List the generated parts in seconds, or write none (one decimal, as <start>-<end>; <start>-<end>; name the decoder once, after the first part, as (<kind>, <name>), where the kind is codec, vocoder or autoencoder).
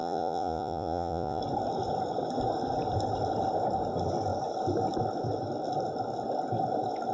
0.0-1.4 (vocoder, Vocos)